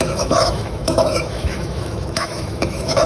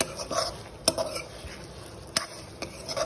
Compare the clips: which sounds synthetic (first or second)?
first